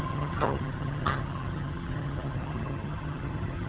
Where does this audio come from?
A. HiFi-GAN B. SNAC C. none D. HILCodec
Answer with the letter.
A